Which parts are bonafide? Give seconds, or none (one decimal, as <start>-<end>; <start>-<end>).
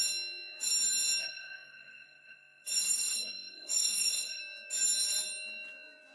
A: 0.0-1.2; 4.4-6.1